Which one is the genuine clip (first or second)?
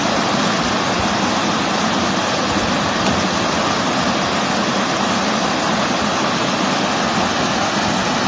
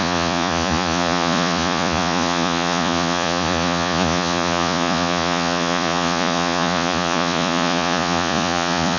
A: first